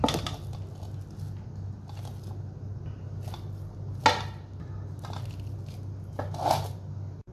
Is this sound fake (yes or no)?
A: no